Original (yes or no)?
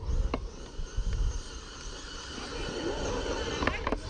yes